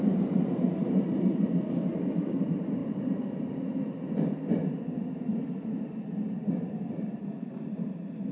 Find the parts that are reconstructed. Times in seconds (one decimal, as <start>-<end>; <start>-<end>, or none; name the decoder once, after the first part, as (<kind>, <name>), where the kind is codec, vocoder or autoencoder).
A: 0.0-5.3 (vocoder, BigVGAN v2); 6.3-8.3